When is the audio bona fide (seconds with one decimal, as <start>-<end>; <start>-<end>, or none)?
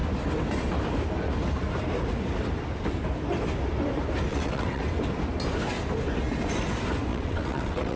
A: 0.0-4.3; 4.8-7.1